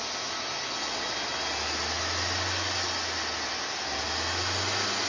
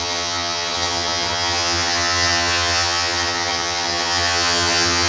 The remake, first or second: second